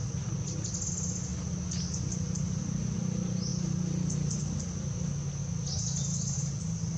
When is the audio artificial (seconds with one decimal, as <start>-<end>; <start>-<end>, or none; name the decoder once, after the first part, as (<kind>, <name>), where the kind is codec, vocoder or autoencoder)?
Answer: none